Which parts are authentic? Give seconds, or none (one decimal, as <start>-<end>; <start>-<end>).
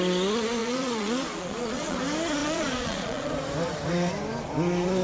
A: 0.0-0.6; 2.0-2.4; 3.3-5.0